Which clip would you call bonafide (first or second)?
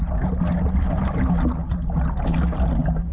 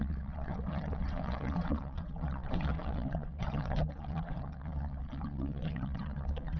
first